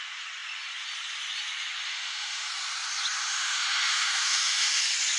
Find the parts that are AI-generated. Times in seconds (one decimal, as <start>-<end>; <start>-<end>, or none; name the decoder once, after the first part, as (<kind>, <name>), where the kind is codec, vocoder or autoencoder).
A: 1.9-2.5 (autoencoder, DAC-VAE); 3.2-4.8